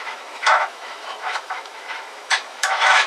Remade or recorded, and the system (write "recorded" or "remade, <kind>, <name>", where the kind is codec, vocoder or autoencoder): remade, autoencoder, DAC-VAE